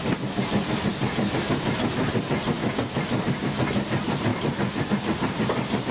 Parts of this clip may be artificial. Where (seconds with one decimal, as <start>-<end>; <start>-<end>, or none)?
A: none